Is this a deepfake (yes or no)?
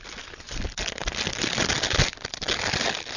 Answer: no